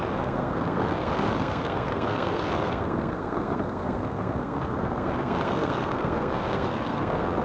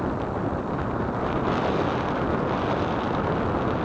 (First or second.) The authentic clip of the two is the second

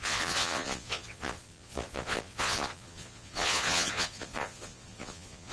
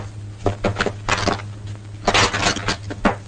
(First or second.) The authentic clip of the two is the second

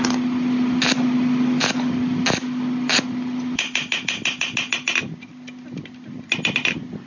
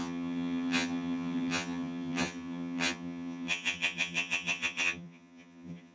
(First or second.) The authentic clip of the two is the first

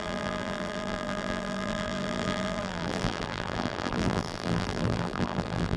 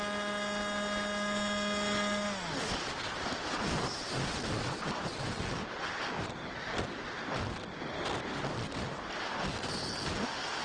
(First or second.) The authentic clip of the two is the second